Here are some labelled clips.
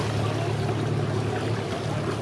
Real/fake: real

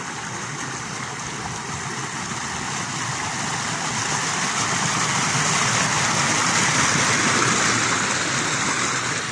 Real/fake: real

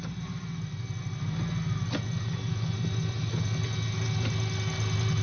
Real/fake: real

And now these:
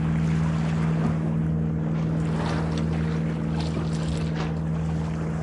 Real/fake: real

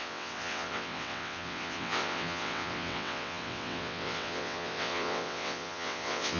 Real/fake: fake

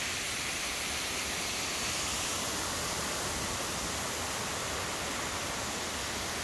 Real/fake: real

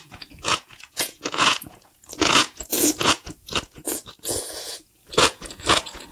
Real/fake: fake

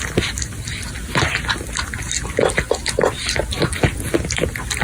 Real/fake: real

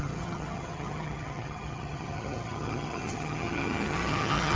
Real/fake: fake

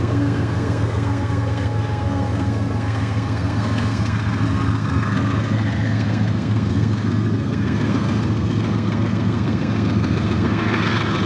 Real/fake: fake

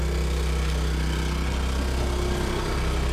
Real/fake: real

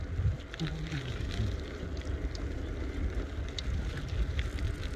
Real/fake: real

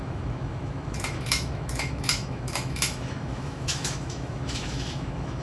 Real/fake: fake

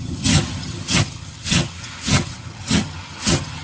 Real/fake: fake